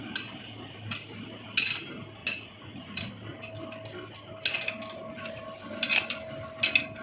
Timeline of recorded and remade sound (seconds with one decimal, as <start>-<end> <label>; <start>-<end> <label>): 0.0-2.2 recorded; 2.2-3.1 remade; 3.1-7.0 recorded